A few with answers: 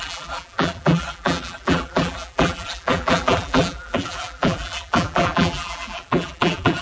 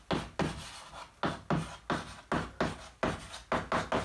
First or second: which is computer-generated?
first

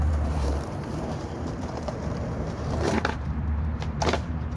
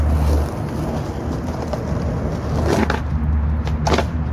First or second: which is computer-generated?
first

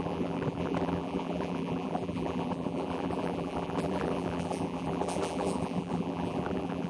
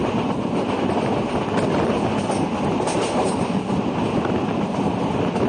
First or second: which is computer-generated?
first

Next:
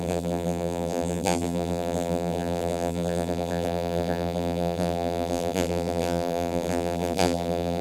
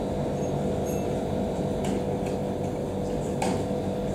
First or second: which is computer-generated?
first